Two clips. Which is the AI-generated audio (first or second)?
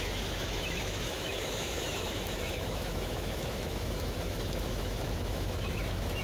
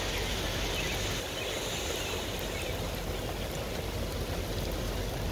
first